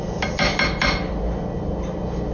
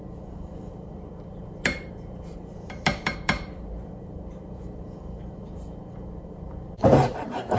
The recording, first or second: first